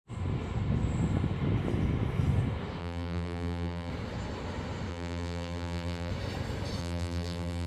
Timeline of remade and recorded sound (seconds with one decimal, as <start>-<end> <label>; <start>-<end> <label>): 0.0-2.8 recorded; 2.8-3.9 remade; 3.9-4.9 recorded; 4.9-6.1 remade; 6.1-6.8 recorded; 6.8-7.7 remade